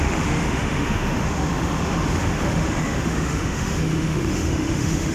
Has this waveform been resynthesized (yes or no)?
yes